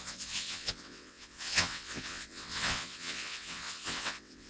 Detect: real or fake fake